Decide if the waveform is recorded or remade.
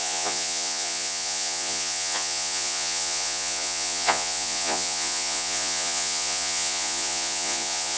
remade